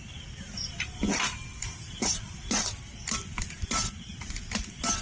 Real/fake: real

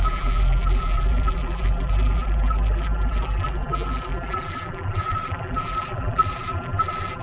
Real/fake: fake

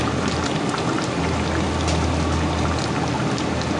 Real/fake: real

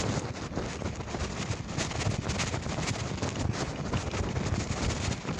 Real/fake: real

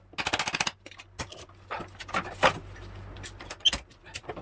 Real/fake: real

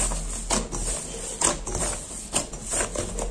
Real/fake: real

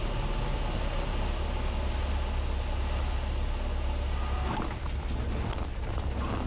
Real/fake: real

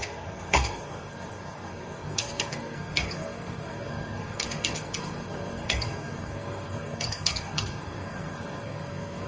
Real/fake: fake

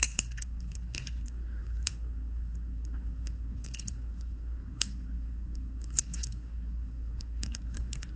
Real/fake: fake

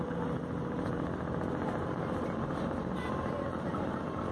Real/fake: fake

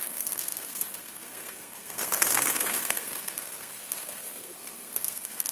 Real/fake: fake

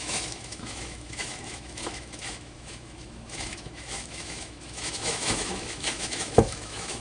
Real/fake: fake